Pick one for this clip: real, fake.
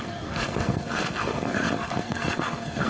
fake